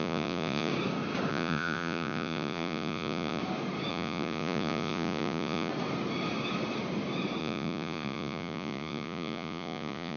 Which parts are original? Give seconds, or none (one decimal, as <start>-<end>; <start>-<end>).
0.7-1.3; 3.4-3.9; 5.7-7.4